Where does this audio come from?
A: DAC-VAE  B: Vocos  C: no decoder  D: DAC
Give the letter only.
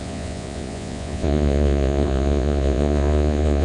B